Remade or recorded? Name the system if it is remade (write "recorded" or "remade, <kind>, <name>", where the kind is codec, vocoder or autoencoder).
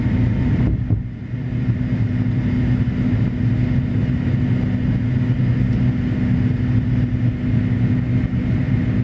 recorded